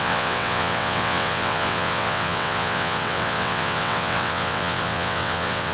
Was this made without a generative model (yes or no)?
no